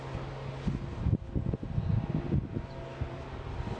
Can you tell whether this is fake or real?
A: real